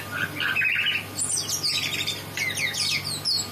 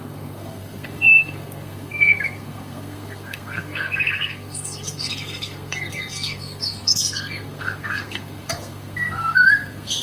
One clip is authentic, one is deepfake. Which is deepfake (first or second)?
second